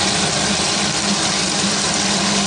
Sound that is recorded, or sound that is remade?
recorded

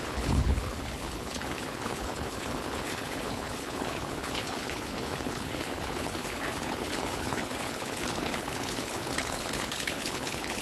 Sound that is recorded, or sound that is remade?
remade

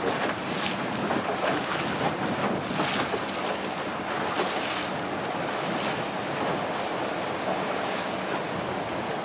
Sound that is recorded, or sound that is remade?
recorded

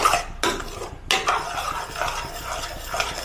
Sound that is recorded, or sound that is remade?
recorded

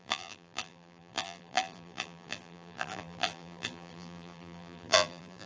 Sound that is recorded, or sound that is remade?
remade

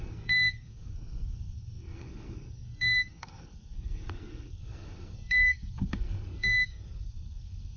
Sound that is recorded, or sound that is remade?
remade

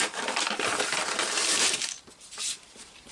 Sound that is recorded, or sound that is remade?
remade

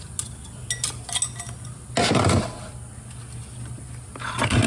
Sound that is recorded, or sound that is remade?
recorded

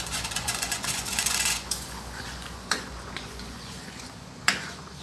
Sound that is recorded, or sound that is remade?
remade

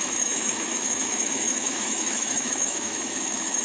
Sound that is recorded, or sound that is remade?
remade